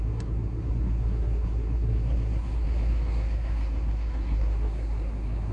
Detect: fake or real fake